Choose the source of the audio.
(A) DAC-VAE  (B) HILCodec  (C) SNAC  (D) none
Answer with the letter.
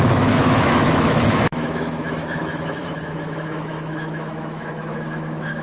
A